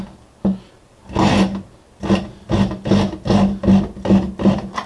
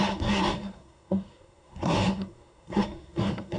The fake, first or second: second